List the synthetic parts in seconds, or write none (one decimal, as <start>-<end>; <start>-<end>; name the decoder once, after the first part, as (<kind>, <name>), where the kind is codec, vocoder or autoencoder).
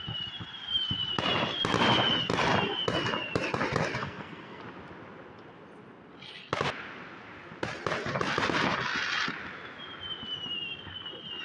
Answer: 4.0-4.6 (codec, SNAC)